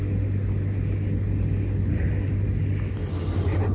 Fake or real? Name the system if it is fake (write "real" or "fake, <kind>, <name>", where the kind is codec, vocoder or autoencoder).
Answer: real